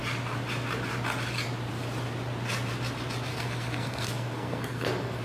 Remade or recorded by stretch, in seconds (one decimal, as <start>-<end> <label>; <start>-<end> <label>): 0.0-3.3 recorded; 3.3-5.2 remade